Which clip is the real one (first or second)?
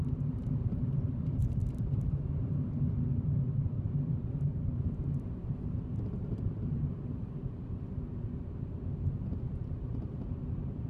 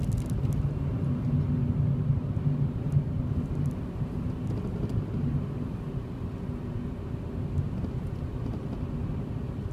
second